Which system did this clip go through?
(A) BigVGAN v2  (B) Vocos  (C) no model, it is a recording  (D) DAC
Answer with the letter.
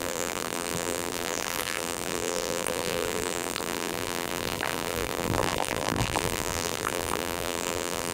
A